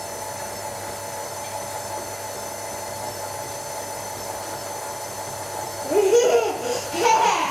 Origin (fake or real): real